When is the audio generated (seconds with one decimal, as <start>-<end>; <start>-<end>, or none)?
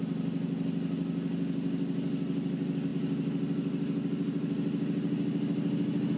none